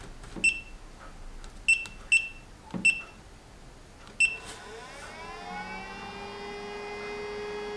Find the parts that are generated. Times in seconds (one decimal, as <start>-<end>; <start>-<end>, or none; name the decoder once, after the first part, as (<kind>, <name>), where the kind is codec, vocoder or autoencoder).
none